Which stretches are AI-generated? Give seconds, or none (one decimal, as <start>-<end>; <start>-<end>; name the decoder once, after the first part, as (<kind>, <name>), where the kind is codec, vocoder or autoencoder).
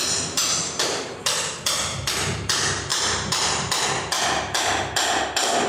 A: 0.4-1.2 (vocoder, BigVGAN v2); 2.9-3.7